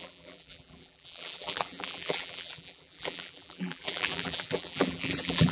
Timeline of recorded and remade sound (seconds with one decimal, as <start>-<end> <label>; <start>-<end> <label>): 0.0-5.5 remade